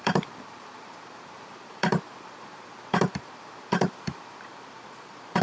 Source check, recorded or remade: remade